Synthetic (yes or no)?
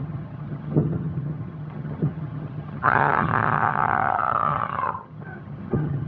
yes